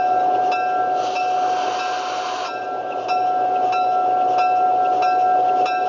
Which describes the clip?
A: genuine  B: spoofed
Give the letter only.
A